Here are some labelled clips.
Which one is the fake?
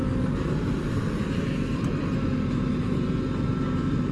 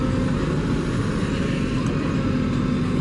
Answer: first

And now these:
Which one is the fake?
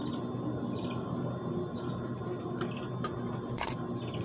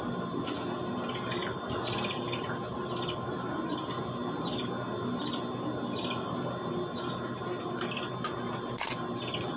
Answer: first